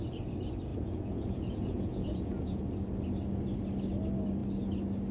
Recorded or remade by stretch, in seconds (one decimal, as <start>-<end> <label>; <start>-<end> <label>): 0.0-0.7 recorded; 0.7-2.6 remade; 2.6-5.1 recorded

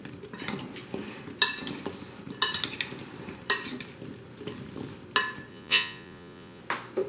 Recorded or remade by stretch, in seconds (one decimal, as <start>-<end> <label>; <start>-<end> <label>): 0.0-5.5 recorded; 5.5-6.6 remade; 6.6-7.1 recorded